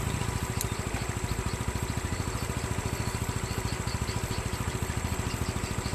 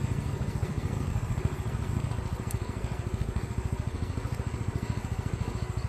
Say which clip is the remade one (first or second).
second